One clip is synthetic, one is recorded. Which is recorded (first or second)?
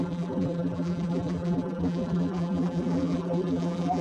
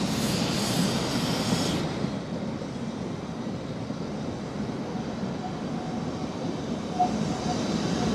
second